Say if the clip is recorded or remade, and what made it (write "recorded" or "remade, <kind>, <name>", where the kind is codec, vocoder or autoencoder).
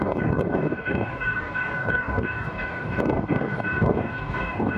remade, codec, DAC